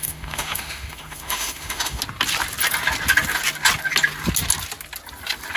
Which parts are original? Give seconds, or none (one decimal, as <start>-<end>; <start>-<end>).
2.0-5.6

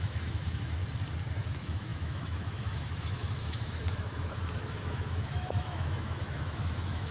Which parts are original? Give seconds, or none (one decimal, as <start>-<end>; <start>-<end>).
0.8-1.3

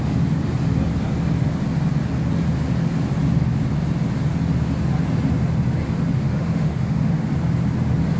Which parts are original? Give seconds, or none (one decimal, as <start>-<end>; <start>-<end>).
0.0-6.2; 7.1-8.2

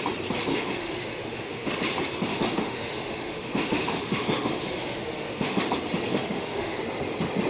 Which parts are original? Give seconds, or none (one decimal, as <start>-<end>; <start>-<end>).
0.0-0.5; 1.7-2.3; 5.6-6.1; 6.8-7.5

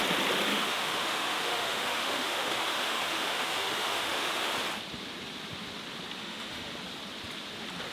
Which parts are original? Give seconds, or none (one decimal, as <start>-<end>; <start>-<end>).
0.0-0.5; 4.5-6.2; 6.7-7.9